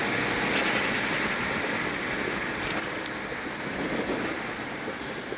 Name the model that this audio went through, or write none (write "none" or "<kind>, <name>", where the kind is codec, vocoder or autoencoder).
none